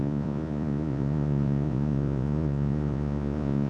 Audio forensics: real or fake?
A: fake